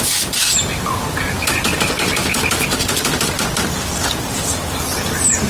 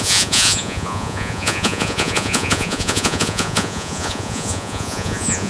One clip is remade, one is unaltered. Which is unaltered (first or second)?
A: first